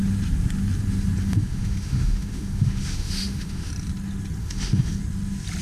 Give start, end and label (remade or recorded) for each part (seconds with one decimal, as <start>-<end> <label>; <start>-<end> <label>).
0.0-1.2 recorded; 1.2-3.7 remade; 3.7-4.4 recorded; 4.4-5.0 remade; 5.0-5.6 recorded